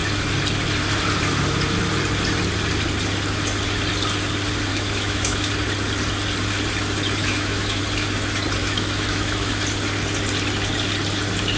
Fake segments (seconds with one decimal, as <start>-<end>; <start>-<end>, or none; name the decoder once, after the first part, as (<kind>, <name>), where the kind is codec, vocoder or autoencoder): 4.7-5.5 (autoencoder, DAC-VAE); 7.2-7.8; 8.6-9.5

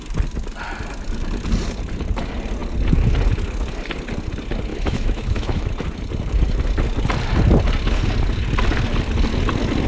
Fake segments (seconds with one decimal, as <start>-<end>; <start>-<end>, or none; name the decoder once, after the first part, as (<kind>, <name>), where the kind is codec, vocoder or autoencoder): 4.7-5.7 (autoencoder, DAC-VAE)

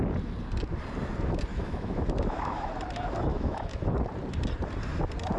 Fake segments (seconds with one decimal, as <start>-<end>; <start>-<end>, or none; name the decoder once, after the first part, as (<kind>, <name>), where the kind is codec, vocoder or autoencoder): 1.5-2.7 (autoencoder, DAC-VAE); 3.3-3.9

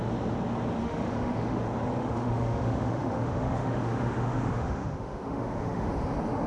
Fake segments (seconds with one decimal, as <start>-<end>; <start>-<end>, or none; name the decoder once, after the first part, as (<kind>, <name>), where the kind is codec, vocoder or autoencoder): 0.8-1.6 (autoencoder, DAC-VAE); 2.0-5.9

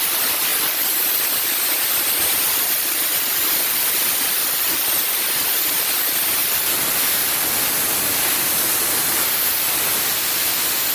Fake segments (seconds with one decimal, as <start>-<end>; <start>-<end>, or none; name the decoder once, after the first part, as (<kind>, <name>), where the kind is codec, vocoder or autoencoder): none

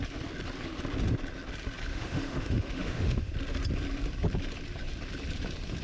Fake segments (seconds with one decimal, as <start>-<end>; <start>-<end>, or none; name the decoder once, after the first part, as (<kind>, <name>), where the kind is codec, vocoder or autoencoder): 1.9-3.3 (autoencoder, DAC-VAE)

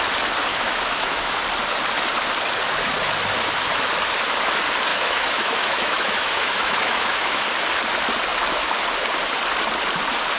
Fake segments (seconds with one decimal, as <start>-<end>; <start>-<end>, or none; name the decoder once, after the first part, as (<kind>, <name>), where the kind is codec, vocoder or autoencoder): 0.5-1.4 (autoencoder, DAC-VAE); 4.9-7.4

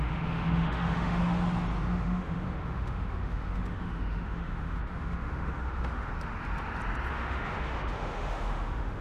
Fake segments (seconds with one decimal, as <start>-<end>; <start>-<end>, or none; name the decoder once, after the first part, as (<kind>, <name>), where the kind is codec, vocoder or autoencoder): 0.0-1.2 (autoencoder, DAC-VAE); 1.9-6.1; 7.1-9.0